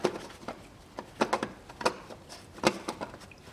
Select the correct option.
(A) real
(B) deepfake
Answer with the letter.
A